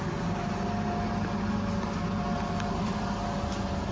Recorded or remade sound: recorded